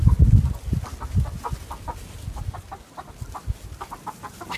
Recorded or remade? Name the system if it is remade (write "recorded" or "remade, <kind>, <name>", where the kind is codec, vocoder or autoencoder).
recorded